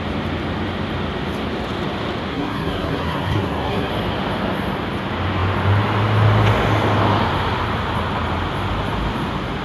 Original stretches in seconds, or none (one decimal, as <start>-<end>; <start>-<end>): 0.0-2.3; 3.9-9.6